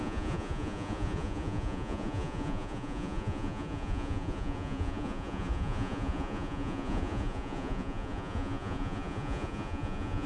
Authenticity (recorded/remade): remade